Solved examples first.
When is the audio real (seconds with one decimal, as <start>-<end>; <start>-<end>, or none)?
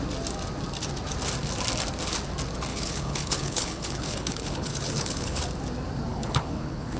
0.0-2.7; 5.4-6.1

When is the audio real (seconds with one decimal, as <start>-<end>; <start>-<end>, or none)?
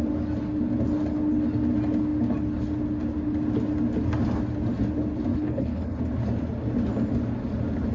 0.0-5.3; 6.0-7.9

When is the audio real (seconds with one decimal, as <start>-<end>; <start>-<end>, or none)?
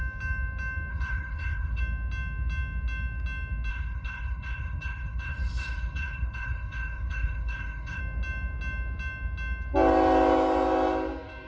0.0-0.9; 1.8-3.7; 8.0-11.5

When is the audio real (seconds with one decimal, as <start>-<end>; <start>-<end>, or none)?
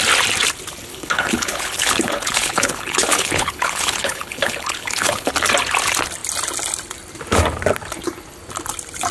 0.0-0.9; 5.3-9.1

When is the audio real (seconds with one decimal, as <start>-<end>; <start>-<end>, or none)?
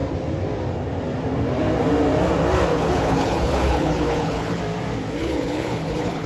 0.0-2.7; 4.6-5.2